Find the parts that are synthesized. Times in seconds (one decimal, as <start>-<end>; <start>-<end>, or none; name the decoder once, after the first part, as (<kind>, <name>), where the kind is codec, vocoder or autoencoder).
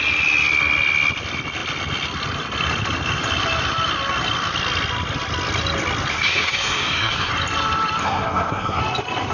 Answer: 6.1-7.3 (codec, SNAC); 8.0-8.8